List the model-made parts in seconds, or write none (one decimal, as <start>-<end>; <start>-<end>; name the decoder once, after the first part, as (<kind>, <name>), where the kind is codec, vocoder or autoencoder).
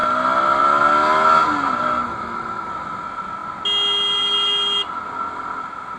2.0-2.7 (autoencoder, DAC-VAE)